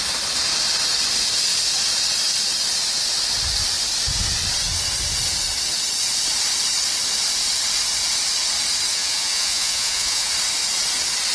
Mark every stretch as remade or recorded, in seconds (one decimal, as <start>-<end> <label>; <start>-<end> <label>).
0.0-8.9 recorded; 8.9-10.3 remade; 10.3-11.3 recorded

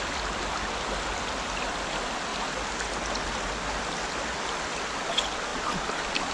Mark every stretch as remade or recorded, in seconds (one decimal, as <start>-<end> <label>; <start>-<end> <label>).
0.0-6.3 recorded